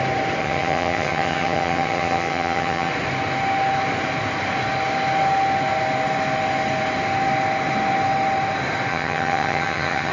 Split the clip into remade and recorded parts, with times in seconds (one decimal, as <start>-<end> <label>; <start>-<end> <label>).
0.0-0.4 recorded; 0.4-2.9 remade; 2.9-8.9 recorded; 8.9-10.1 remade